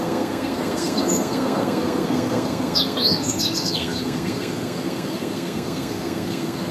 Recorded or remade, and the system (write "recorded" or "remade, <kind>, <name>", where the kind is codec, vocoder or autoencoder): remade, codec, SNAC